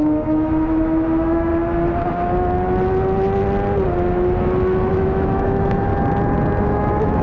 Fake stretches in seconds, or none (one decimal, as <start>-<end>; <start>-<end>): 0.0-1.5; 4.9-5.9; 6.6-7.2